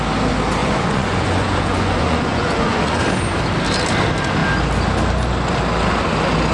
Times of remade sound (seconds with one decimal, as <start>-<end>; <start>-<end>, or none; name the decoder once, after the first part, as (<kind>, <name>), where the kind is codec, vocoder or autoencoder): 0.6-3.0 (vocoder, Vocos)